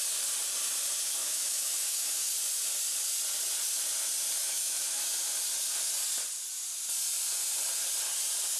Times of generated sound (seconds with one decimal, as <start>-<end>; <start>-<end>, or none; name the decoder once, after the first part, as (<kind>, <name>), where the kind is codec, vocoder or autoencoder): 1.2-2.2 (autoencoder, DAC-VAE); 4.4-5.0